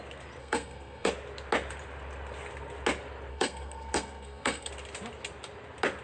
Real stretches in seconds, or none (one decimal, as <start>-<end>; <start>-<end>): 0.0-0.4; 1.1-3.3; 4.7-6.0